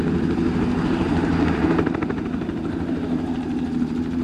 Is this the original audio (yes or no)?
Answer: no